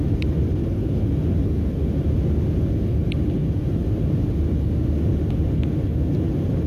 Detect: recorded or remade recorded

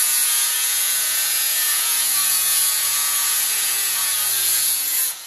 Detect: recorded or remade remade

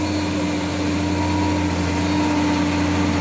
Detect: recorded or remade recorded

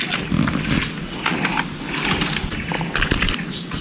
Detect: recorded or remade recorded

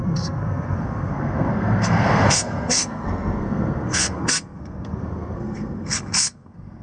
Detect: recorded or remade remade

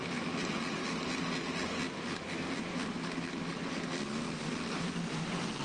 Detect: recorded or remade recorded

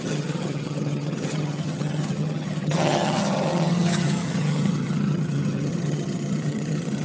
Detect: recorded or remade remade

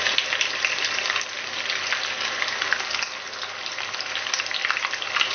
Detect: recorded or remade recorded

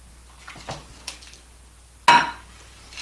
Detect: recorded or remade recorded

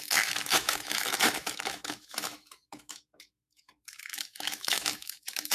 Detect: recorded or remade remade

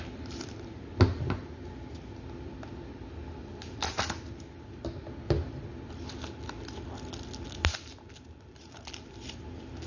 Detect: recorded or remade recorded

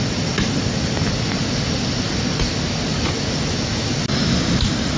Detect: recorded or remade recorded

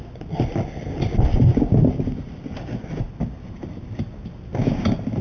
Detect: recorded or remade recorded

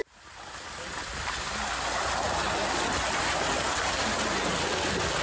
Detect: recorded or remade recorded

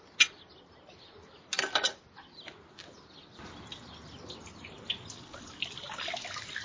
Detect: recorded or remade recorded